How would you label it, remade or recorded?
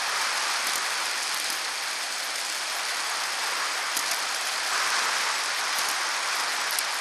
recorded